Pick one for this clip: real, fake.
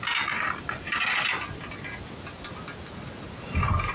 real